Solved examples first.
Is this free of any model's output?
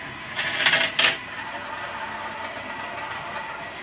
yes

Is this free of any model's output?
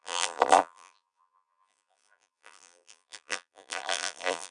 no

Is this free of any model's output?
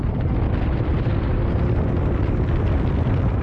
yes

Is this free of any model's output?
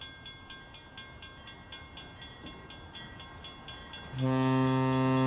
yes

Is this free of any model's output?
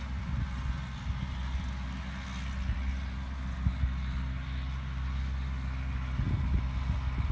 yes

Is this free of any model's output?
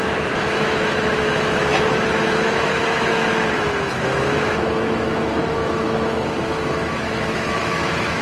no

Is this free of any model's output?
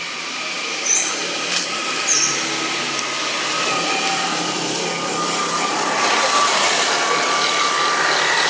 yes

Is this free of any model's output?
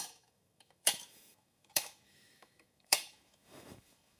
no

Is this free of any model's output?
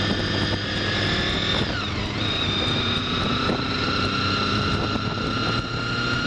yes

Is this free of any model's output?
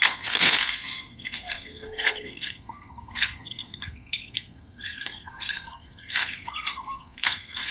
no